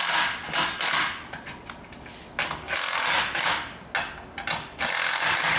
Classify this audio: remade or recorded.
recorded